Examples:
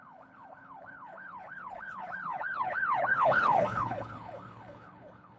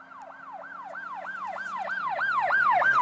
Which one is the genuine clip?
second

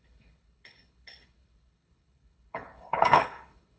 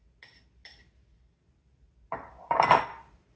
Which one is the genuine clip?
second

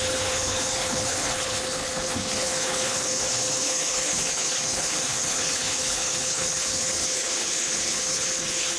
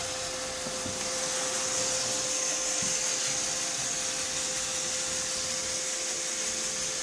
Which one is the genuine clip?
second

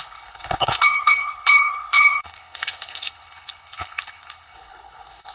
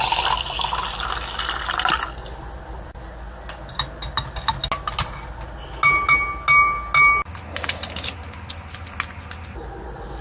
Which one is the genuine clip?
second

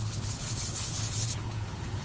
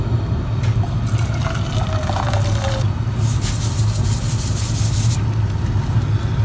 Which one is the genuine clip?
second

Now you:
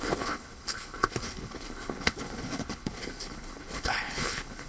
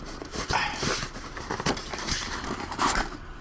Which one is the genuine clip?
second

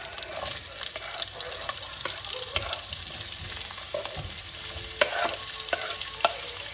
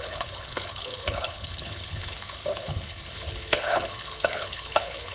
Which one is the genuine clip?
first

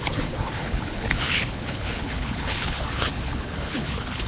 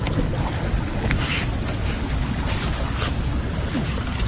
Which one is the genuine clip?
second